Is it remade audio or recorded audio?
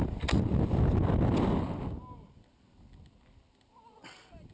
recorded